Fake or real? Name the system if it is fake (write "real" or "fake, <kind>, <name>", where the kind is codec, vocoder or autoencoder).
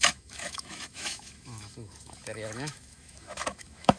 fake, autoencoder, DAC-VAE